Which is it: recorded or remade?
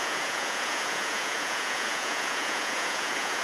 remade